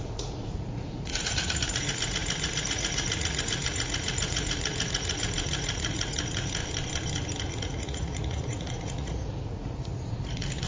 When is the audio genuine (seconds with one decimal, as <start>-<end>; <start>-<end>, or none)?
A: 6.6-7.5